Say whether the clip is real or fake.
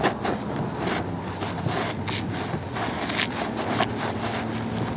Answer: real